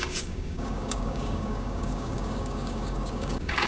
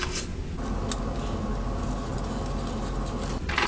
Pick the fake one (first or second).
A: first